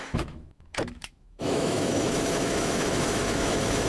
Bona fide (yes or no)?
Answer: no